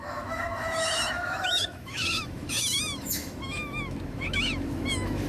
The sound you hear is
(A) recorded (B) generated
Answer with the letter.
B